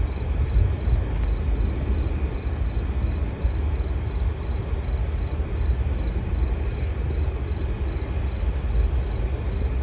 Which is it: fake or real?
real